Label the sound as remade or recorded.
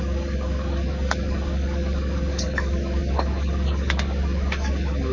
remade